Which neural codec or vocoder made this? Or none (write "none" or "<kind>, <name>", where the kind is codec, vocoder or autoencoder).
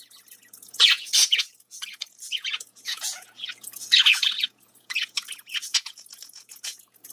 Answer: vocoder, Vocos